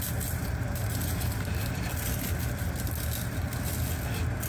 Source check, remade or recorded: recorded